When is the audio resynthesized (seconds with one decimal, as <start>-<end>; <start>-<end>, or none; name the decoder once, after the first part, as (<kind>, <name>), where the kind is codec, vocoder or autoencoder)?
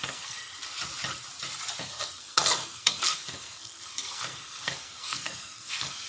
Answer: 0.0-0.5 (codec, SNAC); 1.8-6.1